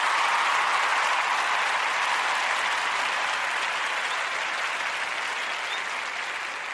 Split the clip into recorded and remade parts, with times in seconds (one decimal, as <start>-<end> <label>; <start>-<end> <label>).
0.0-6.7 recorded